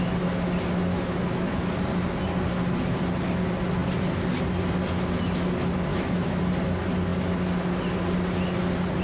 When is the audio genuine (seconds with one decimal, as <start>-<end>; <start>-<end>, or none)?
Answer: 0.0-0.9; 1.7-5.9; 6.4-9.0